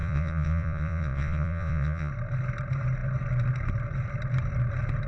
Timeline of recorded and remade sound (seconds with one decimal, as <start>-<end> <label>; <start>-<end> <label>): 0.0-2.1 remade; 2.1-5.1 recorded